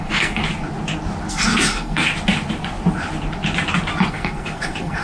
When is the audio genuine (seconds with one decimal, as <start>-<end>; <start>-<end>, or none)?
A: 0.4-1.3; 2.1-4.1